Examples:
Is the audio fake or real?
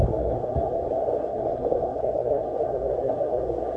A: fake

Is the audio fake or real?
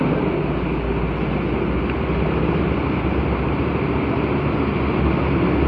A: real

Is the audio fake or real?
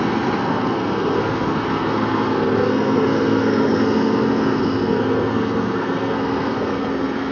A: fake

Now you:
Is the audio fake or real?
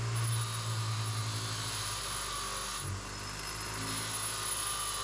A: real